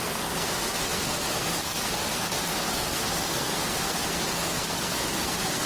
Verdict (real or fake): fake